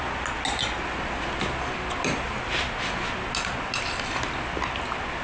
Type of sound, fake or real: real